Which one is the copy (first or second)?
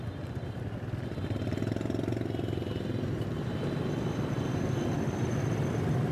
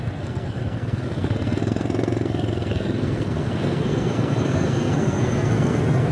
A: second